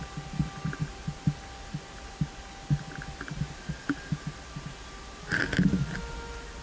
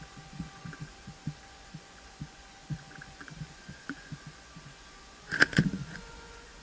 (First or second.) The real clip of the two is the first